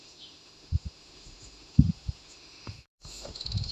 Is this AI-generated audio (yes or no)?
yes